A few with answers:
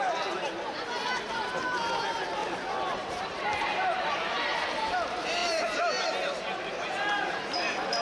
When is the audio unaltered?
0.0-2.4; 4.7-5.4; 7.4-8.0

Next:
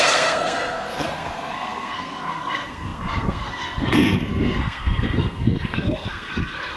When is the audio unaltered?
none

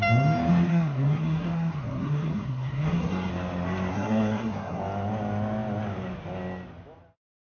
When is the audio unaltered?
0.0-0.7; 3.3-3.9; 4.8-7.5

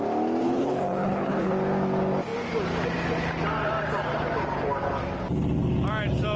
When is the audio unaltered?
0.0-0.4; 1.5-6.4